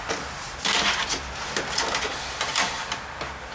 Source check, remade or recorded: recorded